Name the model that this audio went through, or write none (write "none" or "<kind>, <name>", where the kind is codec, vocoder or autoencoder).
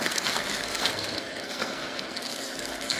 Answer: codec, SNAC